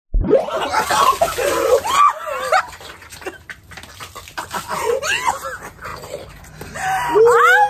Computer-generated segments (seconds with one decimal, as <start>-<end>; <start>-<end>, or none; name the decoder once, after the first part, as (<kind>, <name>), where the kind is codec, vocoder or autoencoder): none

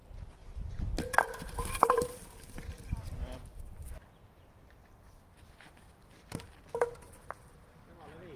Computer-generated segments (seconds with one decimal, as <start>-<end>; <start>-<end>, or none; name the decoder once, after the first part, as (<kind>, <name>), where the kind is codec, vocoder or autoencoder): 0.4-4.6 (vocoder, BigVGAN v2)

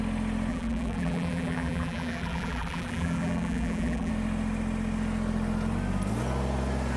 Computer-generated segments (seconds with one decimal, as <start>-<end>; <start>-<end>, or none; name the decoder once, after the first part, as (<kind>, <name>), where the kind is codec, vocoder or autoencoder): 0.5-4.1 (vocoder, BigVGAN v2)

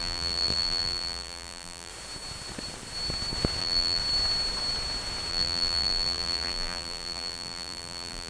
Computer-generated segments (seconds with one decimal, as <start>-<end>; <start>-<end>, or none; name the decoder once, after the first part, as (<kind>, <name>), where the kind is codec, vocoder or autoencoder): 0.0-1.9 (vocoder, BigVGAN v2); 3.6-4.0; 5.3-8.3

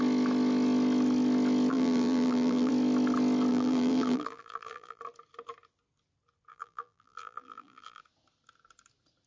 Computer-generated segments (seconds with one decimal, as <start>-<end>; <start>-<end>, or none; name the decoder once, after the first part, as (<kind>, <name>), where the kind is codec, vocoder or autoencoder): 1.7-2.7 (vocoder, BigVGAN v2); 3.5-5.0; 6.5-8.0

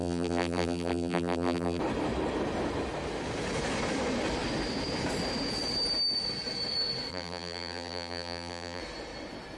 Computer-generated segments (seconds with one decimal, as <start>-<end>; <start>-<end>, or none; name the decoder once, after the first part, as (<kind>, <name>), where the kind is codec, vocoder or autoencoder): 0.0-1.8 (vocoder, BigVGAN v2); 7.1-8.8

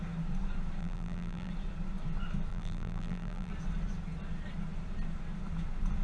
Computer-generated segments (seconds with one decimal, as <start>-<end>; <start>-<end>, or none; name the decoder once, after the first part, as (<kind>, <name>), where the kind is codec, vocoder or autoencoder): 0.8-1.5 (vocoder, BigVGAN v2); 2.5-3.5

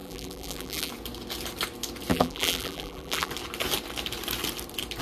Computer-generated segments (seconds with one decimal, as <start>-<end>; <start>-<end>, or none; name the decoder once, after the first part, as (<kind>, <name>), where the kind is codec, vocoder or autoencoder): 0.0-0.9 (vocoder, BigVGAN v2); 2.1-3.3